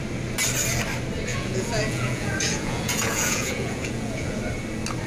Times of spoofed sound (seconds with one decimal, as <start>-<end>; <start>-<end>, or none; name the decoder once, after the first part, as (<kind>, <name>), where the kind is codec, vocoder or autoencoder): 1.3-4.4 (vocoder, Vocos)